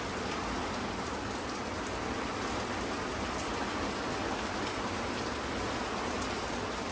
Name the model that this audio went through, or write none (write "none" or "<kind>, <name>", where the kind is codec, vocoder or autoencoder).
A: none